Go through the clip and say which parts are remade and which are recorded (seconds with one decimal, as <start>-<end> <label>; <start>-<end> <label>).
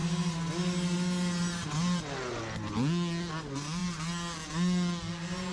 0.0-5.5 recorded